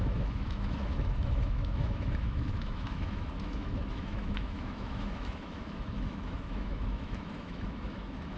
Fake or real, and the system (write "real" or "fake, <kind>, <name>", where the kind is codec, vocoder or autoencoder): fake, autoencoder, DAC-VAE